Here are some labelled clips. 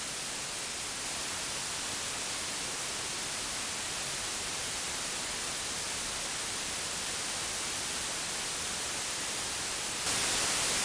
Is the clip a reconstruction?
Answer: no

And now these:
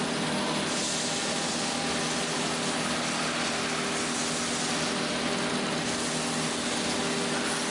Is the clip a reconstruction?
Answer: no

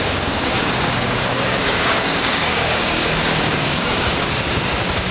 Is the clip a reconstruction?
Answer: yes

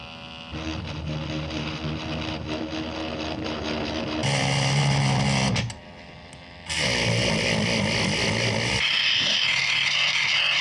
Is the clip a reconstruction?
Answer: no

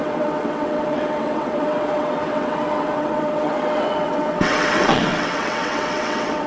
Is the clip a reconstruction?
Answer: yes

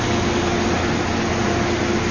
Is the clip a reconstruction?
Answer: no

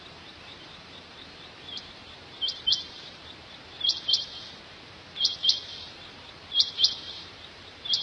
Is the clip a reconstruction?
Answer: yes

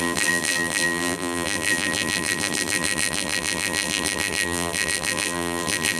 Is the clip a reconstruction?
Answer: yes